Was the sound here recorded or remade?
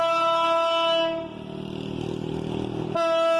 recorded